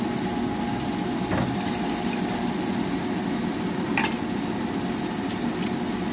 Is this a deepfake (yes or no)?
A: no